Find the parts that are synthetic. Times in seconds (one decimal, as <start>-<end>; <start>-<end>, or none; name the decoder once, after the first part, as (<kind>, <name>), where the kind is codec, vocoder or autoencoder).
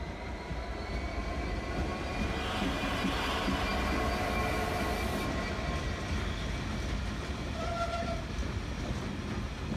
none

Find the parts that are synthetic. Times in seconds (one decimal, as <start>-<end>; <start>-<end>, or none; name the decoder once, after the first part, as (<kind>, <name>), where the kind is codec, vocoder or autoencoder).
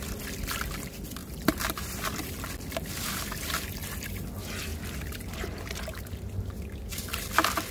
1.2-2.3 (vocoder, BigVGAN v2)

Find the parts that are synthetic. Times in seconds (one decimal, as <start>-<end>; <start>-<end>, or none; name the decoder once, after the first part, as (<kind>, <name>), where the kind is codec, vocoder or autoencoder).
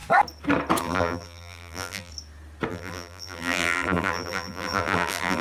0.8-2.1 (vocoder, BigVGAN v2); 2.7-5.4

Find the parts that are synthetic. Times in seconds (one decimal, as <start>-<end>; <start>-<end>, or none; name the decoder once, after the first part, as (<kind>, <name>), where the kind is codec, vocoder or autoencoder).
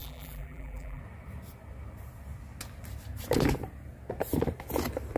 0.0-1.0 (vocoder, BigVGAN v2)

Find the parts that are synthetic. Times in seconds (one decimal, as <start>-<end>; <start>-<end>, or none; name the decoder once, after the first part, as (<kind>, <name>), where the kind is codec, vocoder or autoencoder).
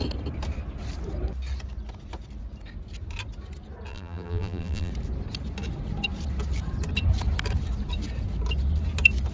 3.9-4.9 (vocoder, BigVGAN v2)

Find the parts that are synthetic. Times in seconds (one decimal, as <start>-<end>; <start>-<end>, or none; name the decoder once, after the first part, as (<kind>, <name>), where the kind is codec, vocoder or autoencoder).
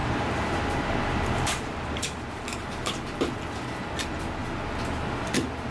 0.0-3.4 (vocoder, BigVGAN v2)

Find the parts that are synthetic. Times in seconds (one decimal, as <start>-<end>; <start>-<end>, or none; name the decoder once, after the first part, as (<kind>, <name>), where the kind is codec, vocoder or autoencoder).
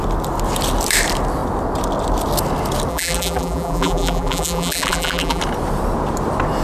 2.9-5.4 (vocoder, BigVGAN v2)